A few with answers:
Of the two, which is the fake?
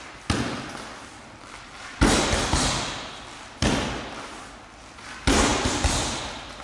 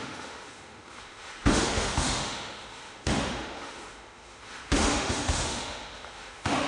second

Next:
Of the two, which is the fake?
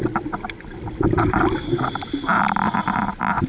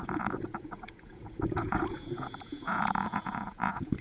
second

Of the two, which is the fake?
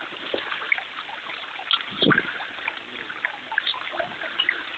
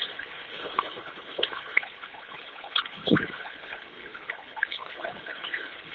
second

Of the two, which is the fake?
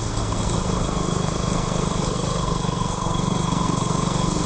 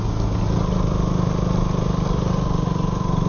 first